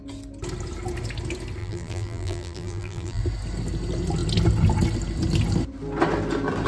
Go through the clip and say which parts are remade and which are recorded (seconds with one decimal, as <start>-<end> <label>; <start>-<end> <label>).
0.0-1.6 recorded; 1.6-3.2 remade; 3.2-6.7 recorded